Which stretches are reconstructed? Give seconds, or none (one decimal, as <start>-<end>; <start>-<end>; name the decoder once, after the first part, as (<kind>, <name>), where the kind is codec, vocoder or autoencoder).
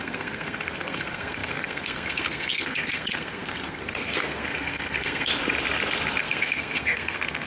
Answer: 0.0-5.3 (codec, SNAC); 6.2-7.5